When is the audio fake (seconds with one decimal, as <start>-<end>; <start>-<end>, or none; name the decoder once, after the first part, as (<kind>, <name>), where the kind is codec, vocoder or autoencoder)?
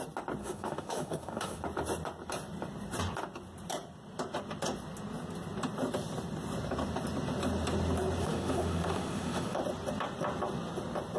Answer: 0.4-1.6 (autoencoder, DAC-VAE); 8.2-9.6